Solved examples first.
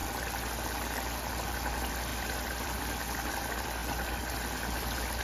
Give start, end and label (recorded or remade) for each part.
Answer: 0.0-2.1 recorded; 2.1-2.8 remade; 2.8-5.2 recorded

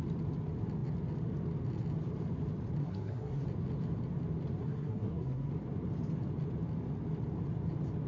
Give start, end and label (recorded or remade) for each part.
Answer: 0.0-2.8 recorded; 2.8-3.4 remade; 3.4-4.6 recorded; 4.6-5.5 remade; 5.5-8.1 recorded

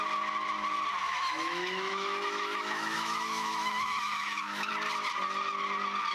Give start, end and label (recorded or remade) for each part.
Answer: 0.0-1.0 recorded; 1.0-4.7 remade; 4.7-6.1 recorded